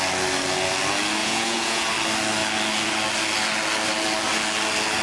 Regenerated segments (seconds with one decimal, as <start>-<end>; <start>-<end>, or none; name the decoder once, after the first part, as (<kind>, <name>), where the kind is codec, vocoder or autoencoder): 1.2-1.9 (vocoder, Vocos)